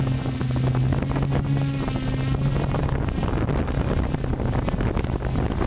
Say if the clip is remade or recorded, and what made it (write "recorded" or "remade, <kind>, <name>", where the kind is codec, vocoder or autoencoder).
recorded